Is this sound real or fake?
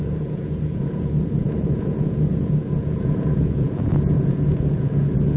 fake